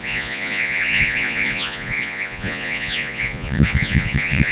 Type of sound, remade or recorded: remade